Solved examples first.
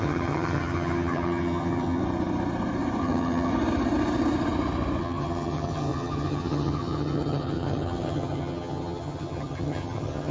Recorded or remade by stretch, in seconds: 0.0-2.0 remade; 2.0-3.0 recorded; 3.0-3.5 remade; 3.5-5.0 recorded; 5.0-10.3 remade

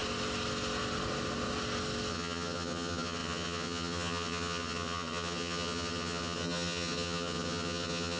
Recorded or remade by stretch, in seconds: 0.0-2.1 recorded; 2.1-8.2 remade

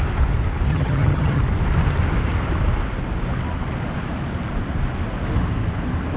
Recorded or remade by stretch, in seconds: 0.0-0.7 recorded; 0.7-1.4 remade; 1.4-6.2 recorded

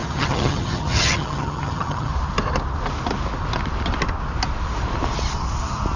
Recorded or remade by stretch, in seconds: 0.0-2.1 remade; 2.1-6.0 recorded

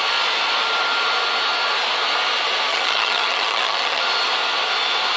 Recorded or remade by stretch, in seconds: 0.0-2.7 recorded; 2.7-4.0 remade; 4.0-5.2 recorded

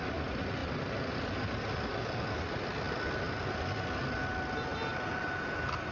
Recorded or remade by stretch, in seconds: 0.0-5.9 recorded

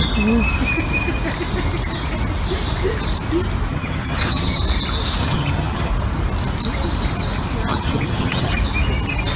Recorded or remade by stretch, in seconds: 0.0-3.7 recorded; 3.7-4.6 remade; 4.6-5.2 recorded; 5.2-5.9 remade; 5.9-7.7 recorded; 7.7-8.5 remade; 8.5-9.4 recorded